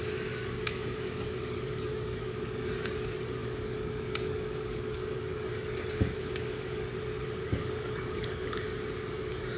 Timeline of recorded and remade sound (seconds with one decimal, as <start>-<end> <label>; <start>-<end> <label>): 0.0-6.9 remade; 6.9-7.4 recorded; 7.4-9.6 remade